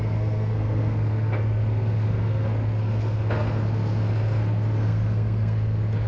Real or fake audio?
fake